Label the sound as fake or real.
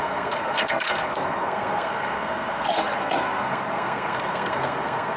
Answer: fake